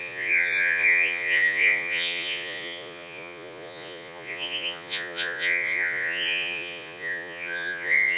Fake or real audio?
fake